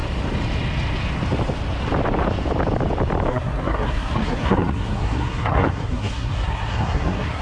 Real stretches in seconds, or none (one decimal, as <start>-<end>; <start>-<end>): 0.0-3.3